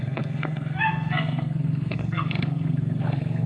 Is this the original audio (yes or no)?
no